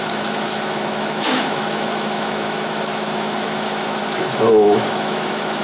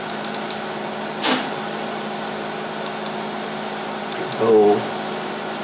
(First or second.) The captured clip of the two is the second